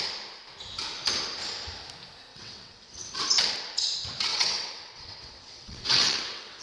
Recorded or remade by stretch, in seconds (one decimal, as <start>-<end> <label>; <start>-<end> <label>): 0.0-2.3 recorded; 2.3-3.1 remade; 3.1-4.3 recorded; 4.3-6.6 remade